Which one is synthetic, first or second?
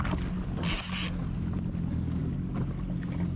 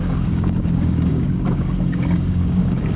second